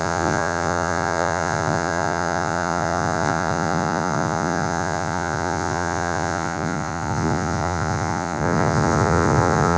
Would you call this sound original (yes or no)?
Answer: no